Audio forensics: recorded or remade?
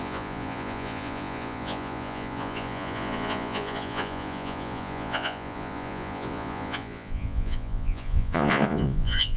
remade